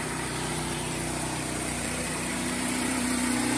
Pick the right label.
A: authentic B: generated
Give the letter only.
B